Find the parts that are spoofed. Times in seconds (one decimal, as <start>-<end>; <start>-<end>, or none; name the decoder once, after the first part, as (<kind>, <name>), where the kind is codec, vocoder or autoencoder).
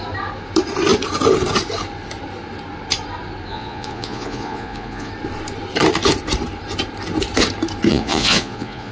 3.5-5.1 (vocoder, Vocos); 7.9-8.9